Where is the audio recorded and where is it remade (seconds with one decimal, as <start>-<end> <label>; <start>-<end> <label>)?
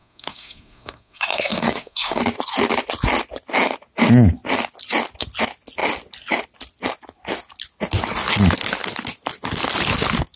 0.0-2.2 remade; 2.2-10.4 recorded